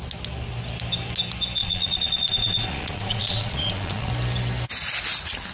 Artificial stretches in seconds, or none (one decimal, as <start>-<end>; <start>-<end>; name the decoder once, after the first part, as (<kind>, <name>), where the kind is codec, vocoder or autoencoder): 1.6-4.1 (vocoder, Vocos)